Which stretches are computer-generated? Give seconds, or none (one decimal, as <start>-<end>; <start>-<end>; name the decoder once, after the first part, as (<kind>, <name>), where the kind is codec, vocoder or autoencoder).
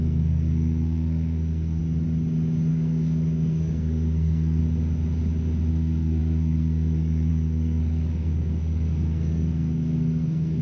0.0-1.8 (codec, SNAC); 2.7-4.6; 5.7-10.6